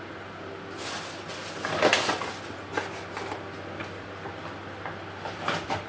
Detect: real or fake real